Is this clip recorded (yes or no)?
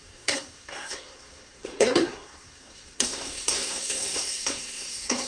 no